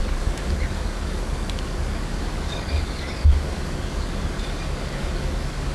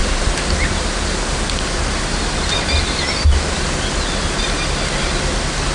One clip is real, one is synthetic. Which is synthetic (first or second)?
first